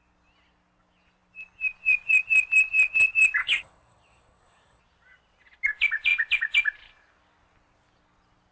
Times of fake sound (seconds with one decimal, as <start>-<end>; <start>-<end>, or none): 3.4-4.8